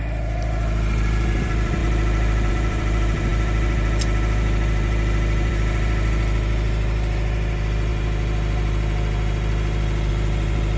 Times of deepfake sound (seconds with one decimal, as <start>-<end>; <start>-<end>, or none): 0.0-10.8